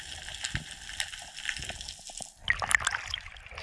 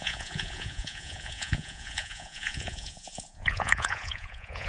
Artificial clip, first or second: second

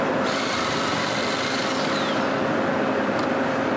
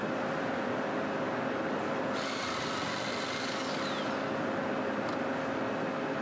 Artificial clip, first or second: first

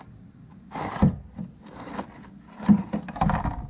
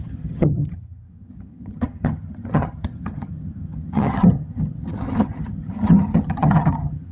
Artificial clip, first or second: second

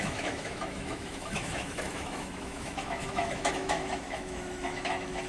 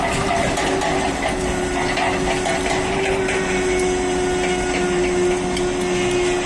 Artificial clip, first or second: first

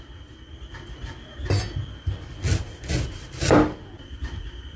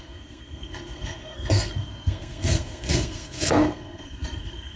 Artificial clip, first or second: second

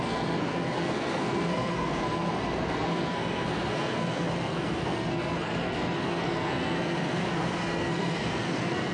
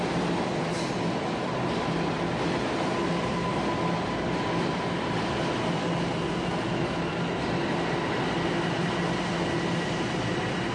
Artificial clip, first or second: first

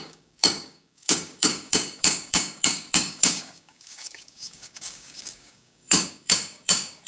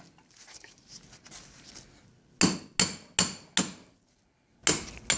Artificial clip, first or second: first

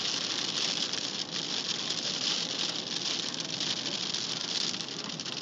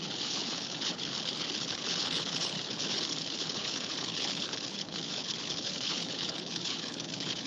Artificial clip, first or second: second